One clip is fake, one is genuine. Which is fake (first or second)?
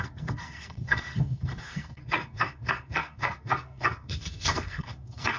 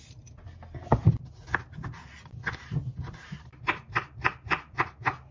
first